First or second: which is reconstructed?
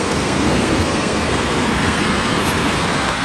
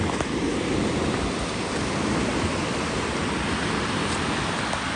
first